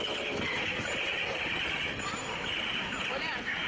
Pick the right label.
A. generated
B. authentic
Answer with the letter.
B